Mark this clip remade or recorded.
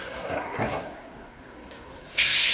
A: remade